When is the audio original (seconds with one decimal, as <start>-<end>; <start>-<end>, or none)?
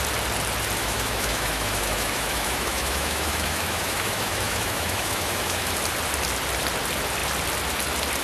0.0-0.8; 5.7-8.2